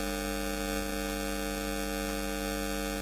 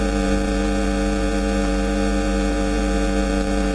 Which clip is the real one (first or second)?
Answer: first